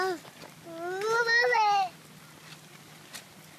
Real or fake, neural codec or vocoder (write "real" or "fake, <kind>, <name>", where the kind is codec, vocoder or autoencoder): real